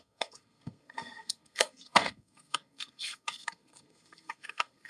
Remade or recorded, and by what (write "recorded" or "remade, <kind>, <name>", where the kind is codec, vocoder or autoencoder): remade, codec, SNAC